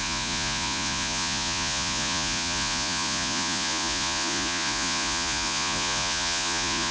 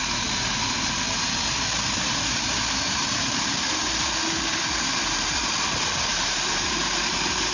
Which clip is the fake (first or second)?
first